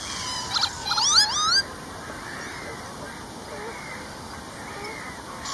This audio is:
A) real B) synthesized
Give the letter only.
A